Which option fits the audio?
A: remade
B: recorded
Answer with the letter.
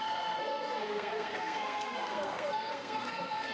A